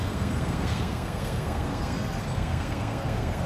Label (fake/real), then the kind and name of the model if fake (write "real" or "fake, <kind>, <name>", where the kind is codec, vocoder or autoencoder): fake, codec, SNAC